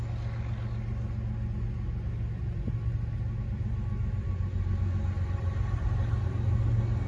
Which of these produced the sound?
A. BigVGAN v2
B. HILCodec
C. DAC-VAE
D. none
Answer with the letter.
D